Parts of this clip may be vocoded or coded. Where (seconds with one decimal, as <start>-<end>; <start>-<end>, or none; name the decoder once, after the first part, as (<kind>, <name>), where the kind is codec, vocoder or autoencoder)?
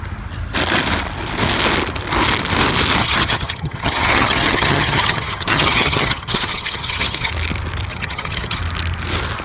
3.0-7.3 (vocoder, HiFi-GAN); 7.9-8.6